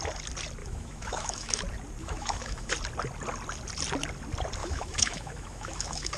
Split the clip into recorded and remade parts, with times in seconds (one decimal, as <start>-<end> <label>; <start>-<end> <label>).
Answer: 0.0-0.6 recorded; 0.6-1.6 remade; 1.6-2.0 recorded; 2.0-2.7 remade; 2.7-4.6 recorded; 4.6-6.2 remade